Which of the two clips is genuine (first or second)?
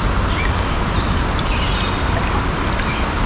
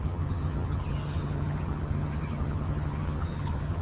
first